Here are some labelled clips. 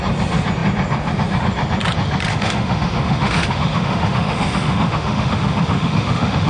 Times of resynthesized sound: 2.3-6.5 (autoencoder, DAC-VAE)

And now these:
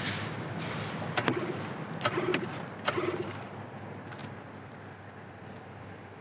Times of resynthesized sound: none

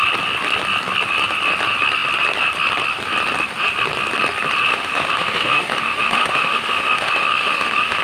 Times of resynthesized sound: 4.7-8.0 (autoencoder, DAC-VAE)

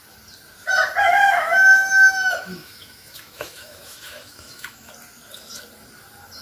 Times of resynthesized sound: 1.1-4.9 (autoencoder, DAC-VAE)

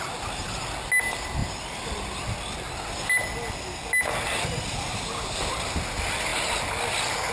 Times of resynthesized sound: none